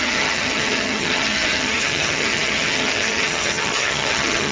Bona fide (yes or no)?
no